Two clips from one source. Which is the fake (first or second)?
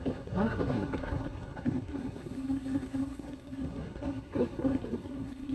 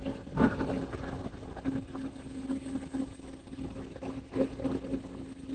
first